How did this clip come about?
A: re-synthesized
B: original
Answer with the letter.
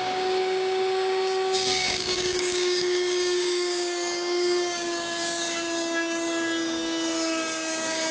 A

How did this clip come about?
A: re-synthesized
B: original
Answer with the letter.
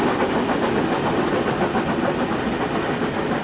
B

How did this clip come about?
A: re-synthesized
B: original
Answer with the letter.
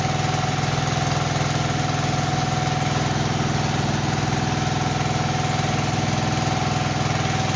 B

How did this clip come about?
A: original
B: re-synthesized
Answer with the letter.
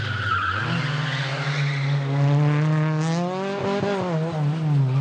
A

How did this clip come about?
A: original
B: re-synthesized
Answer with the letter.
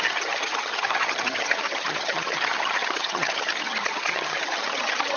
B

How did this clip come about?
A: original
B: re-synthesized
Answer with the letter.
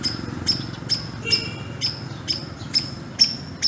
A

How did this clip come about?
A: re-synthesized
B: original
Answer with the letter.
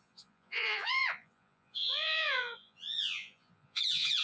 A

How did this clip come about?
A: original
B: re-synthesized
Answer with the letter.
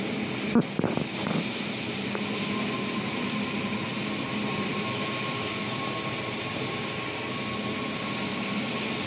A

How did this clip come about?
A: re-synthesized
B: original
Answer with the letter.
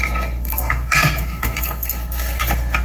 A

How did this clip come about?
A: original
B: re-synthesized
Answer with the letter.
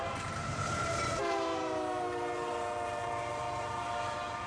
B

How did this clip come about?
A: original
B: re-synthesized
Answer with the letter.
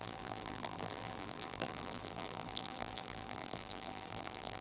B